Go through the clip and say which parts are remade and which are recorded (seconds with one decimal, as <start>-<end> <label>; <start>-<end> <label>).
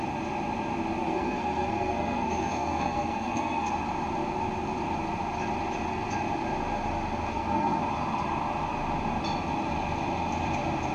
0.0-1.0 recorded; 1.0-3.7 remade; 3.7-7.3 recorded; 7.3-7.8 remade; 7.8-10.9 recorded